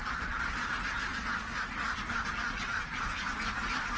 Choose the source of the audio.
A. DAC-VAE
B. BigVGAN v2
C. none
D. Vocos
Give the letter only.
C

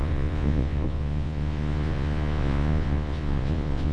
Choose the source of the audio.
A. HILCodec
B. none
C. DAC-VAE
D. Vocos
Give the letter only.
D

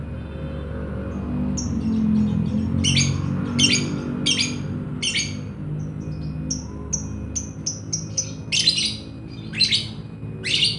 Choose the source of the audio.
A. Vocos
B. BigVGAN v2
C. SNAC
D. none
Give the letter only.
D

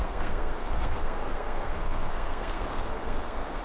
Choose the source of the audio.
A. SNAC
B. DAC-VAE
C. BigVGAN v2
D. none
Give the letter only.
A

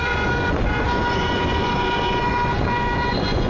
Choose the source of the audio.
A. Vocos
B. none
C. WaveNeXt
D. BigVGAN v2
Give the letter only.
A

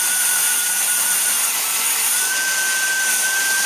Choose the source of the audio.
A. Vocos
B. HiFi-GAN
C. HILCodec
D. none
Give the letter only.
D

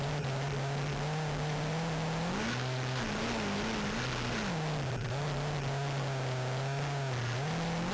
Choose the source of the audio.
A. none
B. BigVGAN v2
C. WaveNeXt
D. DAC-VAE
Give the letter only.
A